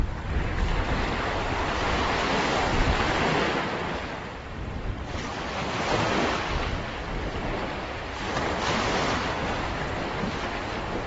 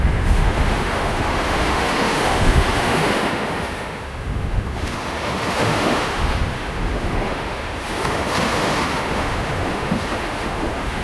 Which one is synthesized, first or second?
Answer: second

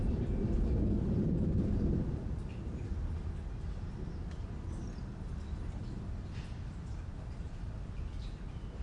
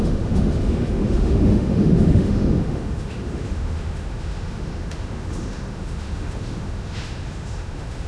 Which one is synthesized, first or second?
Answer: second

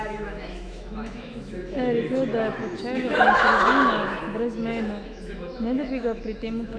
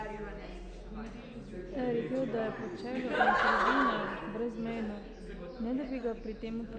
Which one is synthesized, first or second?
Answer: first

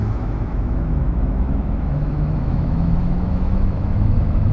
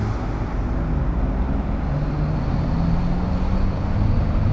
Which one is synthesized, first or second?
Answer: first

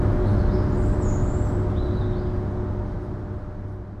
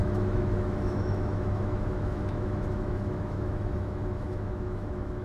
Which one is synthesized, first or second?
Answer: second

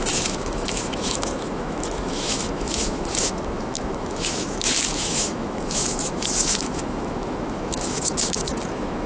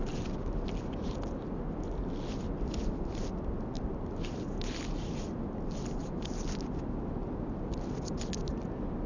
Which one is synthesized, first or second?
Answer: first